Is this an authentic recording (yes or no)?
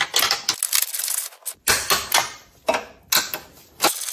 yes